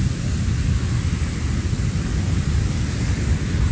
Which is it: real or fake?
real